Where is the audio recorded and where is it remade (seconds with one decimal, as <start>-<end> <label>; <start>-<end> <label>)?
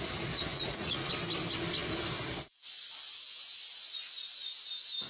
0.0-0.5 recorded; 0.5-1.1 remade; 1.1-5.1 recorded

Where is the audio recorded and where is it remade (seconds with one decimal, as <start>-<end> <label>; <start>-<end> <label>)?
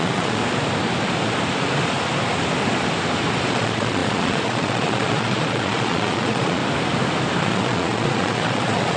0.0-0.4 remade; 0.4-3.5 recorded; 3.5-6.6 remade; 6.6-7.4 recorded; 7.4-9.0 remade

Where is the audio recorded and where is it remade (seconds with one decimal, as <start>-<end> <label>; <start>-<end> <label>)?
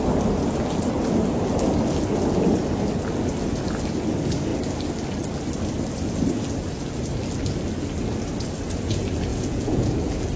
0.0-9.3 recorded; 9.3-9.9 remade; 9.9-10.4 recorded